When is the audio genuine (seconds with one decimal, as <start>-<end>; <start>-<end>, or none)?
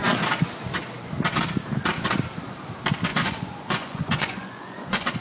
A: 0.0-3.1